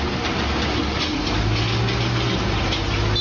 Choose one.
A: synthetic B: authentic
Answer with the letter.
B